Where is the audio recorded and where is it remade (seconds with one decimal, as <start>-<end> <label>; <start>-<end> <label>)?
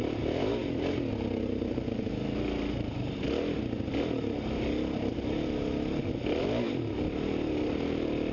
0.0-8.3 recorded